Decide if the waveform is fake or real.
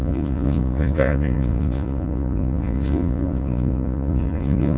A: fake